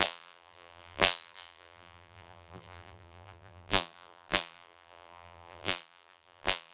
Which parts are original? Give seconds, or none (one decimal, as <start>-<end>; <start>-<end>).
none

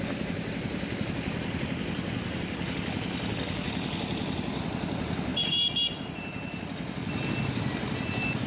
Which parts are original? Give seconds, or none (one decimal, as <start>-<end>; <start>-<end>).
0.0-8.5

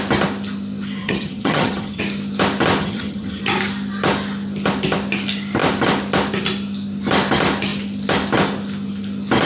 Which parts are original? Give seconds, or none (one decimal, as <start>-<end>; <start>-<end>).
0.0-1.0; 2.0-2.8; 3.4-9.5

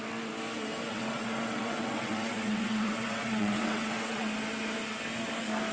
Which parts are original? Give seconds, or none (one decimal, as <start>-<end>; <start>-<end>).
0.0-0.9; 4.3-5.7

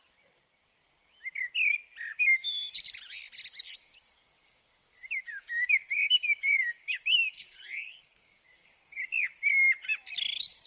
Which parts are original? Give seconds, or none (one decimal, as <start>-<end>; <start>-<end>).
0.0-2.1; 2.7-4.2; 9.0-10.7

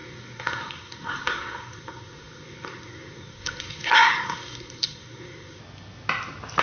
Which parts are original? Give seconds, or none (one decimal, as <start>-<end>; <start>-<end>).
5.6-6.6

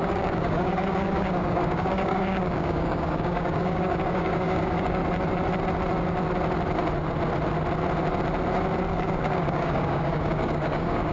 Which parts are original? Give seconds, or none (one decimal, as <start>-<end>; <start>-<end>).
5.0-8.9

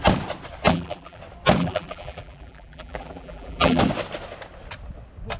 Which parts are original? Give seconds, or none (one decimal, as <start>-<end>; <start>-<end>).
0.0-0.7; 1.2-1.6; 3.8-5.4